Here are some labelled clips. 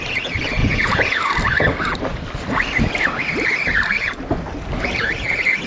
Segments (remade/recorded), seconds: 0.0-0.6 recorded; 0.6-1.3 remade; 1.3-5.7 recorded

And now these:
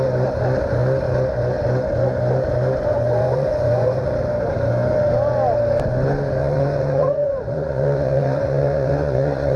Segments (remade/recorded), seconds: 0.0-2.9 recorded; 2.9-4.1 remade; 4.1-6.4 recorded; 6.4-9.6 remade

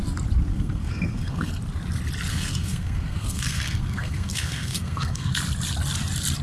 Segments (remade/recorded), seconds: 0.0-0.5 recorded; 0.5-1.5 remade; 1.5-2.3 recorded; 2.3-5.3 remade; 5.3-6.4 recorded

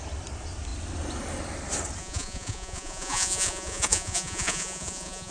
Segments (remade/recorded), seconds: 0.0-2.0 recorded; 2.0-5.3 remade

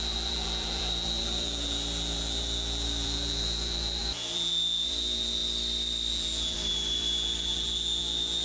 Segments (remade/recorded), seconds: 0.0-5.4 remade; 5.4-6.1 recorded; 6.1-8.4 remade

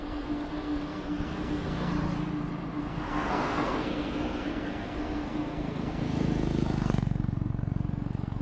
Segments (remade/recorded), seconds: 0.0-1.9 remade; 1.9-2.8 recorded; 2.8-8.4 remade

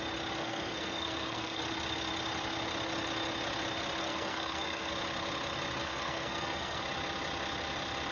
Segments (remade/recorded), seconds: 0.0-0.4 recorded; 0.4-1.6 remade; 1.6-4.0 recorded; 4.0-4.9 remade; 4.9-5.8 recorded; 5.8-6.8 remade; 6.8-8.1 recorded